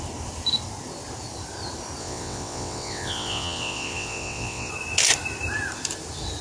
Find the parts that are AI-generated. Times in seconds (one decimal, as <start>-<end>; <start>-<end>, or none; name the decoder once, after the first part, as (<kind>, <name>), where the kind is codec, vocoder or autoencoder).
2.0-4.7 (vocoder, WaveNeXt)